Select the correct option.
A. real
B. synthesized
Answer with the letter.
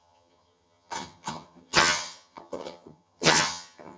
B